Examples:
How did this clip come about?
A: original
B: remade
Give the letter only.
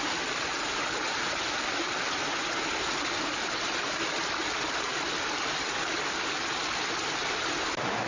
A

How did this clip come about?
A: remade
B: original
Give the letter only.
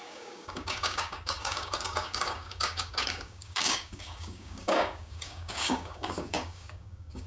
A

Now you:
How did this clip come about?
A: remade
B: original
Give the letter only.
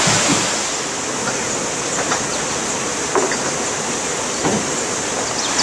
B